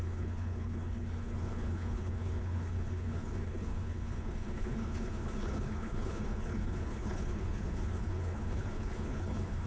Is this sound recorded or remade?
remade